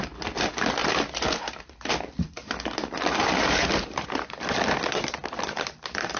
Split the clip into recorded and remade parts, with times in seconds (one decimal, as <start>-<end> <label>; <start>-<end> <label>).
0.0-6.2 remade